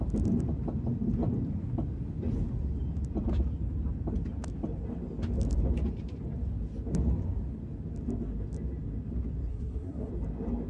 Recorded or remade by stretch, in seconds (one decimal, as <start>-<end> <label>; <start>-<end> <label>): 0.0-9.5 recorded; 9.5-10.1 remade; 10.1-10.7 recorded